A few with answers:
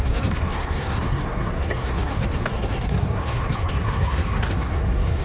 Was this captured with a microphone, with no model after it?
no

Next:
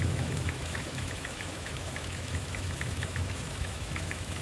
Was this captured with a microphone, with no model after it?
no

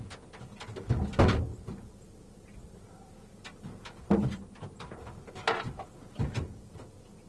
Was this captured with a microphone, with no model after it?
yes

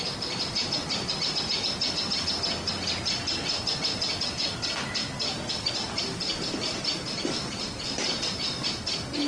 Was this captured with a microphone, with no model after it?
yes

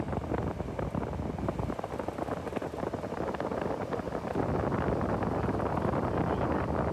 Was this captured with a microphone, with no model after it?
yes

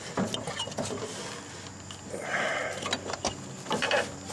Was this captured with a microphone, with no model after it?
yes